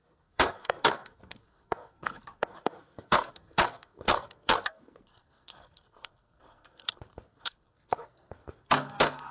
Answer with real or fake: fake